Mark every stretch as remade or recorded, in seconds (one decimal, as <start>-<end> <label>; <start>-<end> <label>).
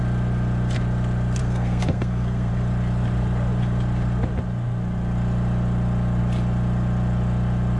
0.0-1.4 recorded; 1.4-2.5 remade; 2.5-7.8 recorded